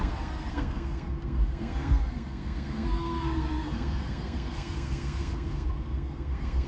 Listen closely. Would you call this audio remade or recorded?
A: remade